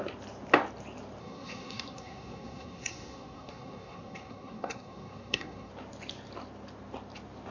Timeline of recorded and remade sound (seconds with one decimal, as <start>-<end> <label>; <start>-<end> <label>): 0.0-1.2 recorded; 1.2-5.7 remade; 5.7-7.5 recorded